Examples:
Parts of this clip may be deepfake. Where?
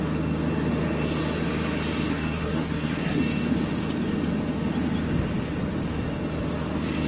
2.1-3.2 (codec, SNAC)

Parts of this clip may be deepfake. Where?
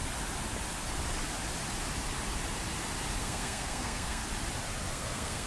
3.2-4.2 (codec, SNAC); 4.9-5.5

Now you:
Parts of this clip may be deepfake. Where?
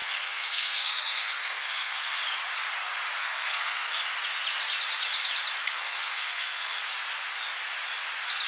0.0-2.2 (codec, SNAC); 3.2-4.0; 5.7-6.8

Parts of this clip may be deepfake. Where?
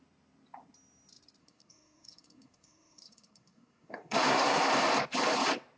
1.4-4.6 (codec, SNAC)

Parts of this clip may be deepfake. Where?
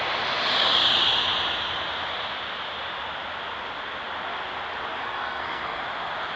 4.9-5.8 (codec, SNAC)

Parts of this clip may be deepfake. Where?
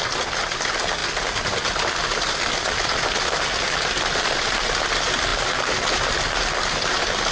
none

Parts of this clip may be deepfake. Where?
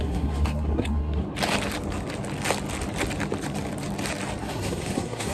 0.0-1.2 (codec, SNAC); 4.4-5.3